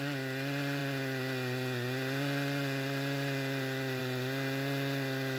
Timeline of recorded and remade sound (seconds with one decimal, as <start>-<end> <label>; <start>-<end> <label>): 0.0-5.4 recorded